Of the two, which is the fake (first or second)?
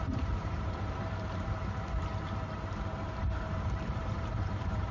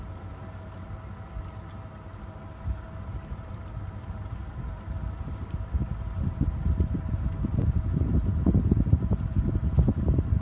first